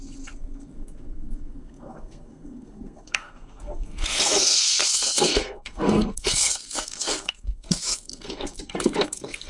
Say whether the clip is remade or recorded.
remade